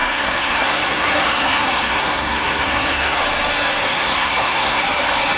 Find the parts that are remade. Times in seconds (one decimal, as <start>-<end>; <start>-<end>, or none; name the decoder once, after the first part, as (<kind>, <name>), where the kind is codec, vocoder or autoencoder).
0.0-3.2 (codec, SNAC); 3.9-4.8